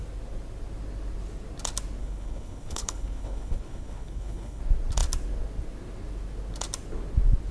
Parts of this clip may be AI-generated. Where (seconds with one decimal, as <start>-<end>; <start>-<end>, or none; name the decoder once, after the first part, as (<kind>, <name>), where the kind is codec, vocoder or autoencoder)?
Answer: 2.0-4.6 (codec, HILCodec)